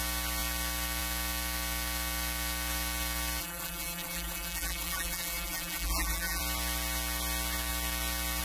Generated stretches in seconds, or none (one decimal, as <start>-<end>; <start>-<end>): 3.4-6.4